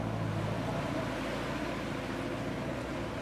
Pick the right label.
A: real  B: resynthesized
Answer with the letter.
A